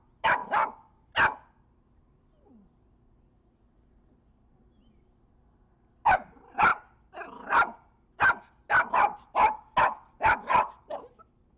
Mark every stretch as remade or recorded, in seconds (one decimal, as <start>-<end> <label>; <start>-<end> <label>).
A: 0.0-11.6 recorded